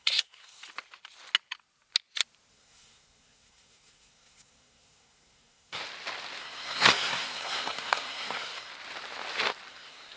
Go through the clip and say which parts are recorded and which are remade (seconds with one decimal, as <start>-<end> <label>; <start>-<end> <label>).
0.0-0.6 remade; 0.6-2.5 recorded; 2.5-5.8 remade; 5.8-6.4 recorded; 6.4-8.7 remade; 8.7-9.7 recorded; 9.7-10.2 remade